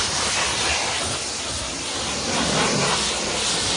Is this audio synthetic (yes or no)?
no